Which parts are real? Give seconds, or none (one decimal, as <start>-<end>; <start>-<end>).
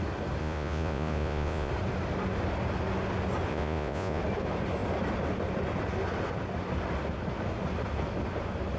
0.0-0.4; 1.7-3.5; 4.2-8.8